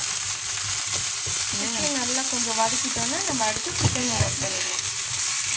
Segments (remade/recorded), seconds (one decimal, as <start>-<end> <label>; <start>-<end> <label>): 0.0-4.0 recorded; 4.0-4.9 remade; 4.9-5.6 recorded